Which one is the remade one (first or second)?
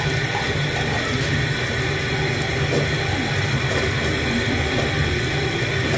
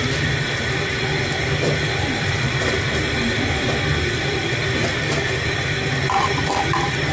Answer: second